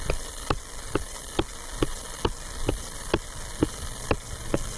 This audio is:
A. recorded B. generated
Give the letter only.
A